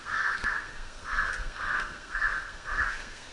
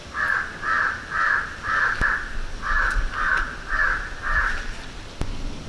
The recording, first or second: second